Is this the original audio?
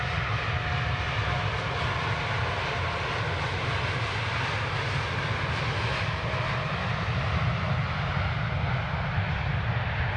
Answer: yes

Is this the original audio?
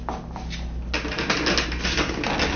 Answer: yes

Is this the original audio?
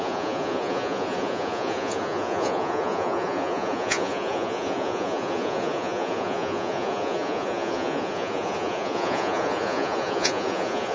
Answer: no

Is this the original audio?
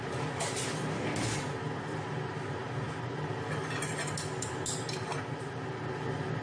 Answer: yes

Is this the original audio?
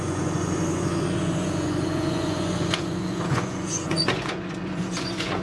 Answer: no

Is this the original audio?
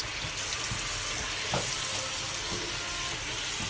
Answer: yes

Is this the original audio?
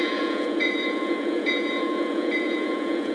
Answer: no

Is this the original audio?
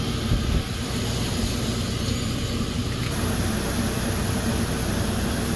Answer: yes